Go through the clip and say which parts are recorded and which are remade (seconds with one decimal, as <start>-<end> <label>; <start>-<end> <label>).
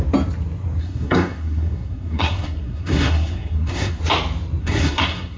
0.0-0.8 recorded; 0.8-4.0 remade; 4.0-4.6 recorded; 4.6-5.4 remade